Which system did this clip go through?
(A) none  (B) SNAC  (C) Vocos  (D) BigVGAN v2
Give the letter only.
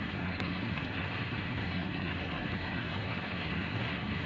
B